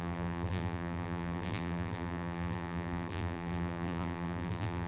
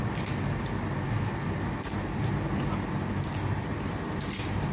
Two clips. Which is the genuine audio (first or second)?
second